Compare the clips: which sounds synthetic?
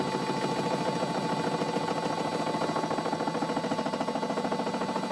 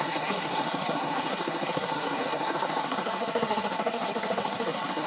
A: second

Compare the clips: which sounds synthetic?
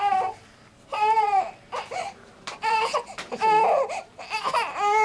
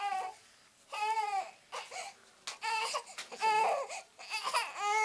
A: first